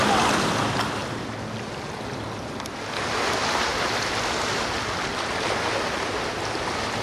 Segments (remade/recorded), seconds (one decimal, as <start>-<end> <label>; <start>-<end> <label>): 0.0-1.0 remade; 1.0-1.7 recorded; 1.7-3.7 remade; 3.7-7.0 recorded